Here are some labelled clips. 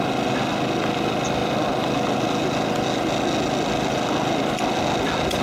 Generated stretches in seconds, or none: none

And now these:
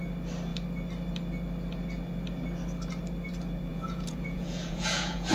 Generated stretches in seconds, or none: 3.7-5.3 (vocoder, Vocos)